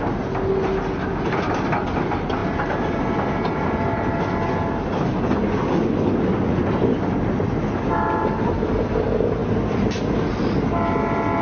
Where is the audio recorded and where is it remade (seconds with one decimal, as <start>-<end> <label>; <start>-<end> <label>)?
0.0-11.4 recorded

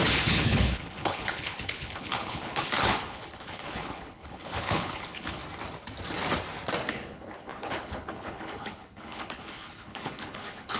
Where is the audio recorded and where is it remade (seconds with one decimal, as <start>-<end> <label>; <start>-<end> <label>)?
0.0-5.4 remade; 5.4-6.9 recorded; 6.9-10.8 remade

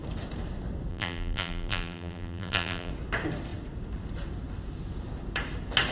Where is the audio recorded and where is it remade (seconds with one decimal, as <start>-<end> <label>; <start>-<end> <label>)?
0.0-0.9 recorded; 0.9-2.9 remade; 2.9-5.9 recorded